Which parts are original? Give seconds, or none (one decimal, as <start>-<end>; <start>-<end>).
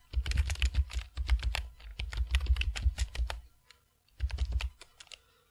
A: 0.0-5.5